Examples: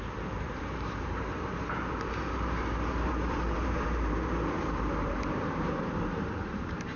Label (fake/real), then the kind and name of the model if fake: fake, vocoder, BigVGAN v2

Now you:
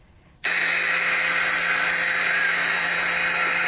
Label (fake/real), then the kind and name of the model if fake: real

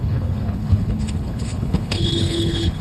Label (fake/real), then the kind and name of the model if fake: fake, codec, HILCodec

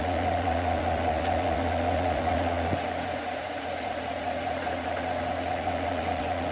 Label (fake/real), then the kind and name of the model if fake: fake, vocoder, Vocos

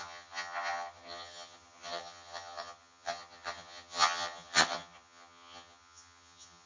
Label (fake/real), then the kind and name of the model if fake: fake, vocoder, HiFi-GAN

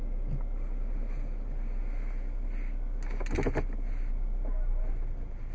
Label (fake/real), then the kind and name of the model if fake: real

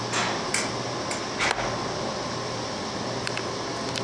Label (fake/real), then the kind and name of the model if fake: real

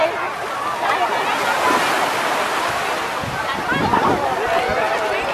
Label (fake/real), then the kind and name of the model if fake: real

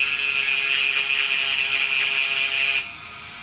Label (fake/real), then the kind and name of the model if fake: real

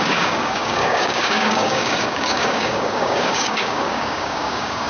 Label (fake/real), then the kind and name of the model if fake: fake, codec, DAC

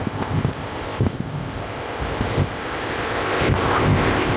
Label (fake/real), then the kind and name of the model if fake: fake, codec, ZipCodec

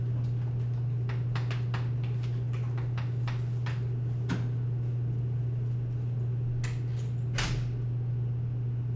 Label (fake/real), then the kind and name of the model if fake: real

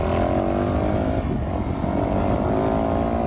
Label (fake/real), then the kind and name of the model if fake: real